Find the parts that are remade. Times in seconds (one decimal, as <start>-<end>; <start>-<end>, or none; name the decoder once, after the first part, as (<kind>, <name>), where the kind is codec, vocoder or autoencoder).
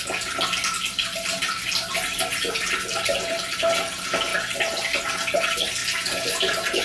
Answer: none